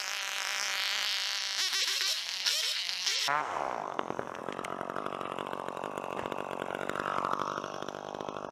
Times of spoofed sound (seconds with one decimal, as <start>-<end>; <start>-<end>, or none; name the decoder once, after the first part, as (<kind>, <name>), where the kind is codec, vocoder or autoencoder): 1.9-4.4 (codec, SNAC)